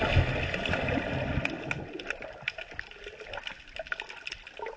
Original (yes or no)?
yes